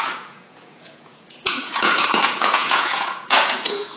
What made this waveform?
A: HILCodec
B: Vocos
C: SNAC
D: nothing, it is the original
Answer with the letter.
B